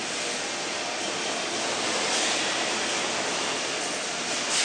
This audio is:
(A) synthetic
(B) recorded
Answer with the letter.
B